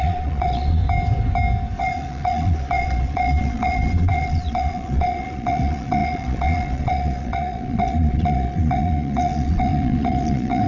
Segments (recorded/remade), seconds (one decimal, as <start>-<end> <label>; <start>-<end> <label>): 0.0-0.8 remade; 0.8-1.8 recorded; 1.8-10.7 remade